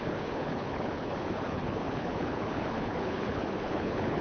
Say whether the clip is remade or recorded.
remade